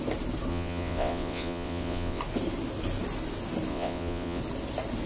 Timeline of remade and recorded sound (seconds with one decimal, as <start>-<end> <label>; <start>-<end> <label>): 0.0-0.5 recorded; 0.5-2.2 remade; 2.2-3.7 recorded; 3.7-4.4 remade; 4.4-5.1 recorded